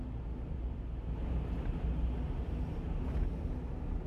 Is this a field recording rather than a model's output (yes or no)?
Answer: yes